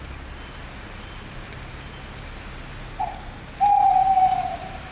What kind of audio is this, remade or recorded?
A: recorded